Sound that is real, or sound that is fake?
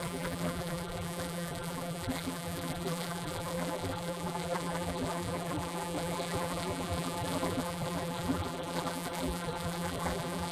fake